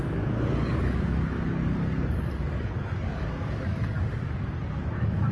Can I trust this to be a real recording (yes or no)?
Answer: no